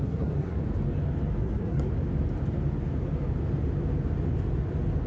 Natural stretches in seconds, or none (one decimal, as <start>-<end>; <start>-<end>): 0.6-1.4; 1.9-5.1